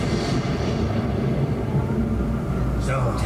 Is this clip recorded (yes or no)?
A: yes